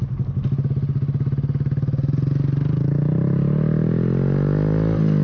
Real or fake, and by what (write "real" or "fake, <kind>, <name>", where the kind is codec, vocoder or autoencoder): real